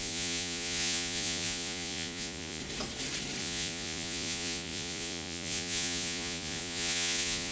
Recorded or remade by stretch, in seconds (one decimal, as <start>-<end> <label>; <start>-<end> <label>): 0.0-2.6 remade; 2.6-3.4 recorded; 3.4-7.5 remade